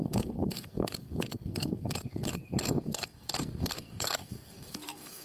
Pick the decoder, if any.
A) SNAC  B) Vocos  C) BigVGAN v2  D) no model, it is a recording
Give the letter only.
A